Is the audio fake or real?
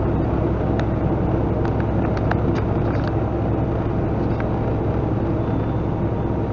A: real